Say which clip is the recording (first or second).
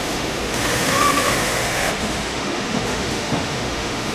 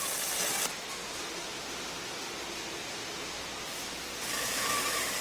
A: second